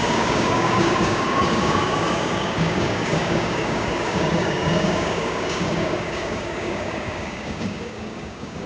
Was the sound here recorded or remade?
remade